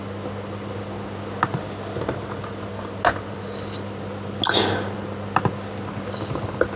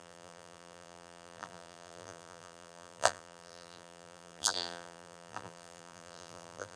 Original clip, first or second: first